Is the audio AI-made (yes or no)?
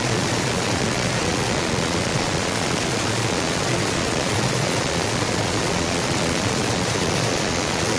yes